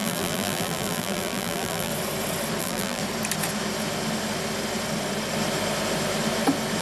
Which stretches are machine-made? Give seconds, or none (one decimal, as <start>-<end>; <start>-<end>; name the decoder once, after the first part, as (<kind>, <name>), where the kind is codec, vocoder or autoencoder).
0.0-1.9 (vocoder, BigVGAN v2); 2.6-3.0

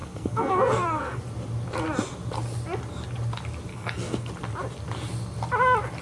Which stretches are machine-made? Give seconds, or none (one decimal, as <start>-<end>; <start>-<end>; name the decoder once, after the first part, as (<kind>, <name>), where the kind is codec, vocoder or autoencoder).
0.0-1.2 (codec, SNAC); 3.7-4.3

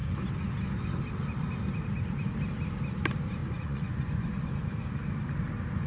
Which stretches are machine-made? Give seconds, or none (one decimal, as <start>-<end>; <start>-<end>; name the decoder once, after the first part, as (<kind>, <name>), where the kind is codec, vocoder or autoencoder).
3.4-4.5 (vocoder, Vocos)

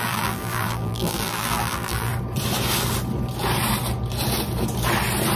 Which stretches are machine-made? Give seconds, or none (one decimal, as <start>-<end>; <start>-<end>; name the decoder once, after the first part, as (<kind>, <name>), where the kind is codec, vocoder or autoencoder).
0.0-2.1 (vocoder, BigVGAN v2)

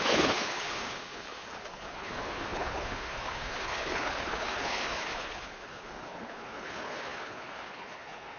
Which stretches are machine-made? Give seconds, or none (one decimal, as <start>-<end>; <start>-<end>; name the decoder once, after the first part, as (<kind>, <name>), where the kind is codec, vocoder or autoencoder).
0.0-8.4 (codec, HILCodec)

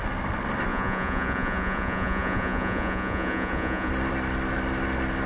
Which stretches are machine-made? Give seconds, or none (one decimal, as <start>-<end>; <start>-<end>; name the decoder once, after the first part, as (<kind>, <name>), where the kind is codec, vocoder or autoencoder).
0.7-3.9 (vocoder, Vocos)